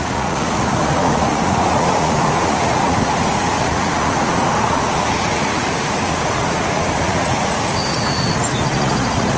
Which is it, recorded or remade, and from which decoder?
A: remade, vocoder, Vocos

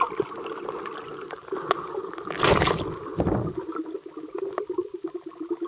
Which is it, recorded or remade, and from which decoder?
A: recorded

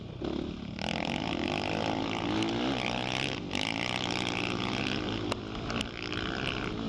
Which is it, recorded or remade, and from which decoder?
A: recorded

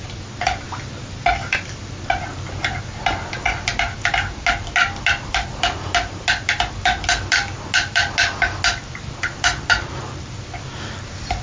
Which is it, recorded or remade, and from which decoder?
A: recorded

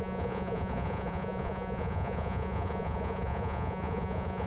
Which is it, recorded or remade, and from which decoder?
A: remade, vocoder, Vocos